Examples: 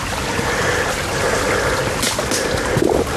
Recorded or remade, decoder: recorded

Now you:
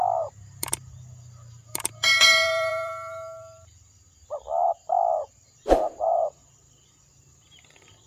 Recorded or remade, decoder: remade, vocoder, BigVGAN v2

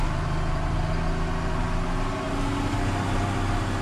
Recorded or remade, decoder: recorded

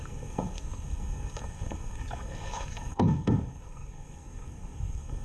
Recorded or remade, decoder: remade, codec, SNAC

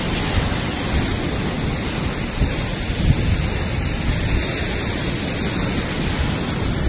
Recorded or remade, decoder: recorded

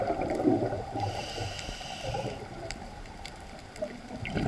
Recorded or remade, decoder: remade, vocoder, BigVGAN v2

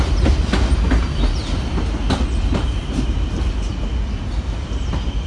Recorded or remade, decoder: recorded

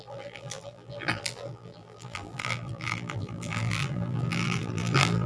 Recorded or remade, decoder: remade, vocoder, BigVGAN v2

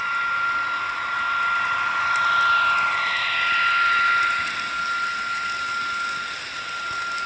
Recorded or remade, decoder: recorded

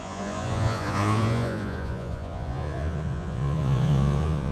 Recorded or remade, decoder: remade, vocoder, Vocos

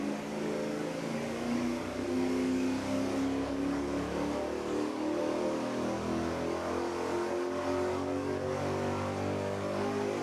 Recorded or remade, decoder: remade, codec, DAC